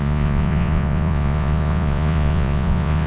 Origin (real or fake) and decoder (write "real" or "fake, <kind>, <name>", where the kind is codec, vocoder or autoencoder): fake, vocoder, Vocos